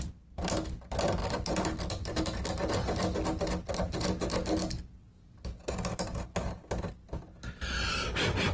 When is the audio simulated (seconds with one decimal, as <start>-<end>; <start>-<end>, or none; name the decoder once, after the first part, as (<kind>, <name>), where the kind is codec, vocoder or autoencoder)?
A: none